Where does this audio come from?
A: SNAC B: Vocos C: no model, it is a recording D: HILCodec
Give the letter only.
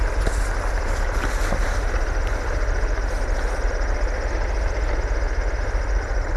C